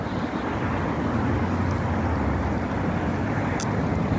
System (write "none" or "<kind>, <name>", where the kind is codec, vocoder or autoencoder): none